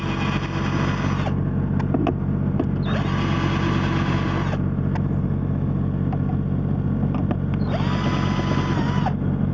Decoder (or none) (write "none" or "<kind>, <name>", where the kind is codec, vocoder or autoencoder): none